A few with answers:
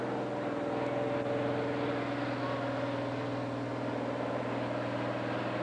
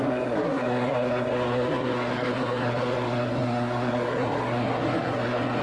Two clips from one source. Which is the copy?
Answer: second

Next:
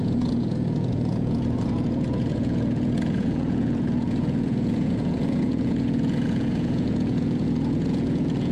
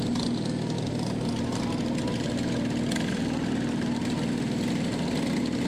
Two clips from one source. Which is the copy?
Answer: first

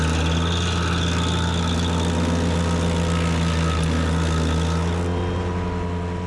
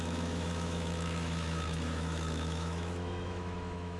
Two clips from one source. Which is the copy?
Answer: second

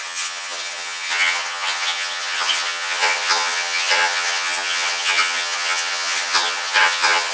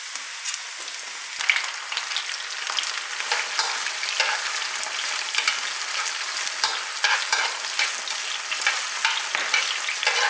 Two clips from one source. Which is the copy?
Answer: first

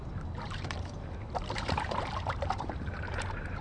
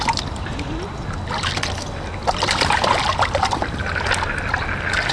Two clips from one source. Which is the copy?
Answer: first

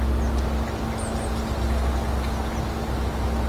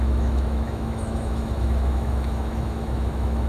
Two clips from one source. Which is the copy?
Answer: second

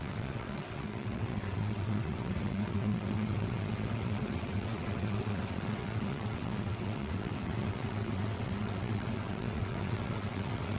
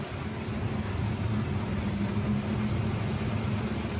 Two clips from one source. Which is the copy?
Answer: first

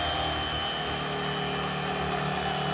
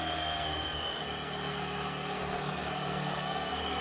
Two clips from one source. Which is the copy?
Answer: second